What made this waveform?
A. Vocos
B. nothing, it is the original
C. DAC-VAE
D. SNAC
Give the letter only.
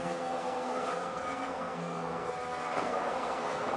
D